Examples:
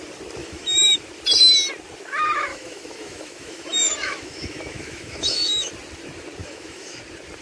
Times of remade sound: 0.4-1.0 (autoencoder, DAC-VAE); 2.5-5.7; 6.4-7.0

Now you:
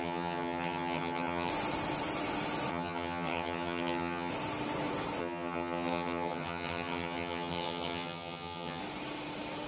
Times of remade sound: 0.0-1.5 (vocoder, HiFi-GAN); 2.7-4.3; 5.2-8.8

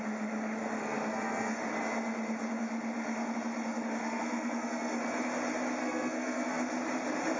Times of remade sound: 0.8-1.6 (codec, SNAC); 4.0-5.0; 5.8-6.6

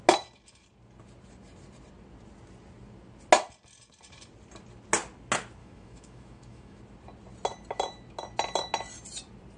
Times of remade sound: 5.6-6.8 (autoencoder, DAC-VAE)

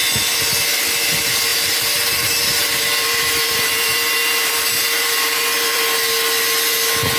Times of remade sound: 1.5-5.8 (vocoder, BigVGAN v2)